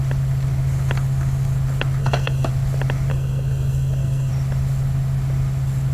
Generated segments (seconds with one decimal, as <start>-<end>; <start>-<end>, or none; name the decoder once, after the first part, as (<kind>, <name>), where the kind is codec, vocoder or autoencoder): 2.0-2.5 (codec, SNAC); 3.1-4.3